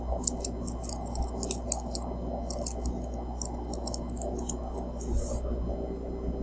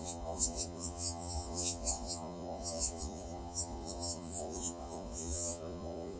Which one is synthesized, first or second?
second